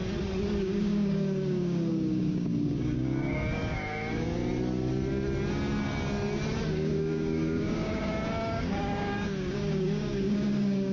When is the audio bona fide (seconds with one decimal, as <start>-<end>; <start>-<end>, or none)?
0.0-0.6; 4.4-6.7